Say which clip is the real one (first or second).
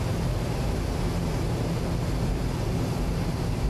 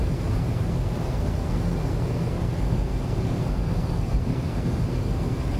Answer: first